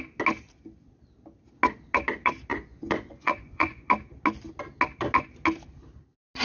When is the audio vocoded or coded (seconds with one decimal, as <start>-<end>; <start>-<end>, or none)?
2.5-3.9